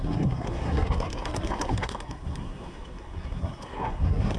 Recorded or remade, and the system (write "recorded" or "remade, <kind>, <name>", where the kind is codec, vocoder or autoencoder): remade, codec, SNAC